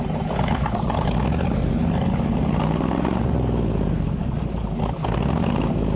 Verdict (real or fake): real